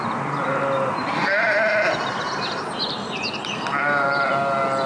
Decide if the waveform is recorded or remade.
recorded